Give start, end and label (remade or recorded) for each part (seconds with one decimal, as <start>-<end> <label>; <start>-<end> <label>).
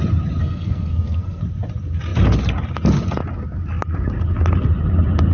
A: 0.0-0.4 recorded; 0.4-1.4 remade; 1.4-5.3 recorded